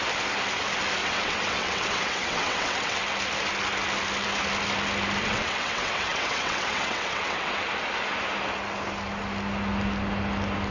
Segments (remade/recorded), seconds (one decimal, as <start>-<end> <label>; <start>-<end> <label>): 0.0-1.0 recorded; 1.0-3.0 remade; 3.0-5.2 recorded; 5.2-7.6 remade; 7.6-10.7 recorded